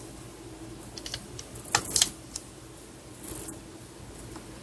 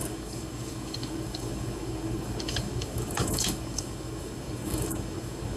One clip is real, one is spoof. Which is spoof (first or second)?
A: second